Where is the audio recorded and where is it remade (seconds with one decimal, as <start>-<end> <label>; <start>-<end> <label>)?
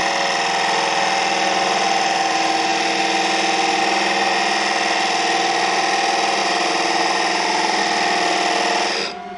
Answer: 0.0-6.4 recorded; 6.4-7.8 remade; 7.8-9.4 recorded